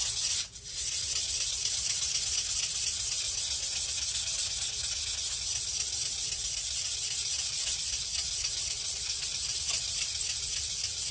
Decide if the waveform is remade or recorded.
recorded